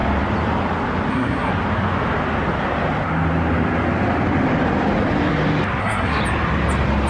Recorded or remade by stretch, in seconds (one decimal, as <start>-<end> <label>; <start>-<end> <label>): 0.0-1.1 recorded; 1.1-1.5 remade; 1.5-5.8 recorded; 5.8-6.2 remade; 6.2-7.1 recorded